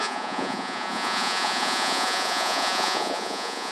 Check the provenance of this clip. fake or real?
fake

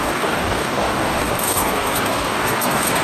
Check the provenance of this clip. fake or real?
fake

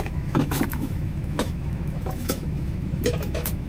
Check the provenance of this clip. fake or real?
fake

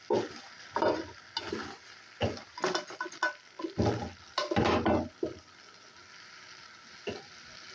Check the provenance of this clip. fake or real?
real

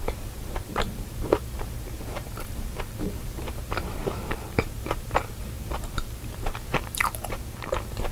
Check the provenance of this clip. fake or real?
fake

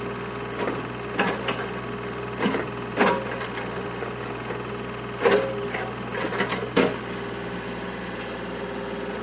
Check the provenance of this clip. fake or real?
real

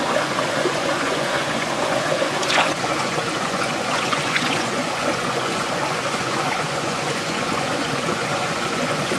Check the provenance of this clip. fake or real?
fake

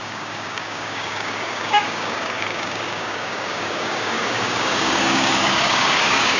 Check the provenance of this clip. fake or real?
fake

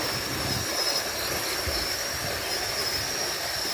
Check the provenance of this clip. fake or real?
real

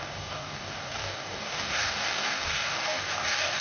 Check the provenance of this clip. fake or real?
fake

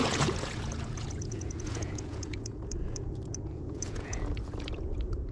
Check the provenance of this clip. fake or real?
fake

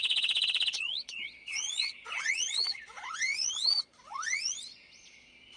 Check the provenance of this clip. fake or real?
fake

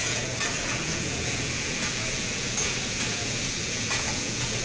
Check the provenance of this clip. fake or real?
fake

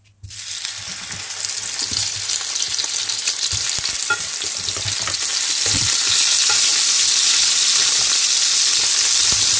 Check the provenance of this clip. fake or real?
real